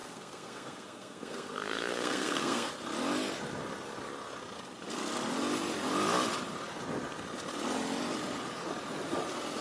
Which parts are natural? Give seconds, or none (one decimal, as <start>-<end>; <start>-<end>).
2.7-9.6